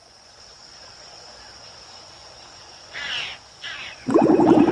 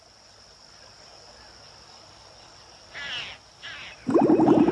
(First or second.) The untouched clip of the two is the second